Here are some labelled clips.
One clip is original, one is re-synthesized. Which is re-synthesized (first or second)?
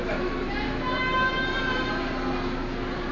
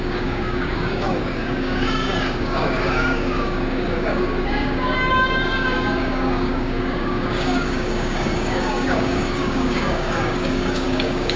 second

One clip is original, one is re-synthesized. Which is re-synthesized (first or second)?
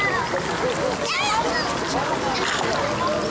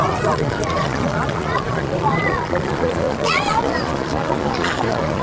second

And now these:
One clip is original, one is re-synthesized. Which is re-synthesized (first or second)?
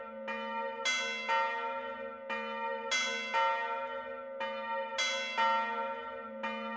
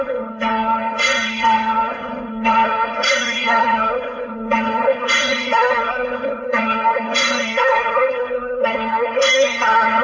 second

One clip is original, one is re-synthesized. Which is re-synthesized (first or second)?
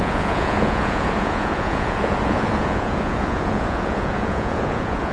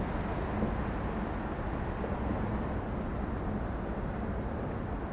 first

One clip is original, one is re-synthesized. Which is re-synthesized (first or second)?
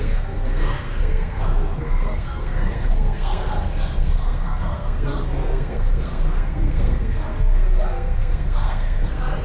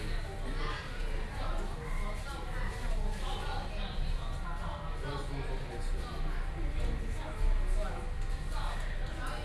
first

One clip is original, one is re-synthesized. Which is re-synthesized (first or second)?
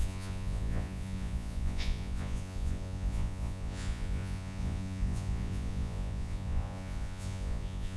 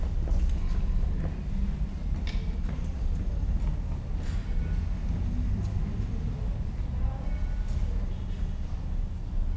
first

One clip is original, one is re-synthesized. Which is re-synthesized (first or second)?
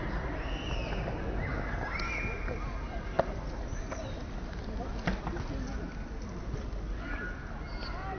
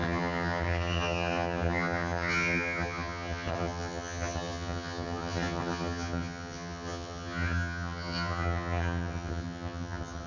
second